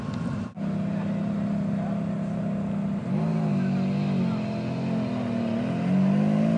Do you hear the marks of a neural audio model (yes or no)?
no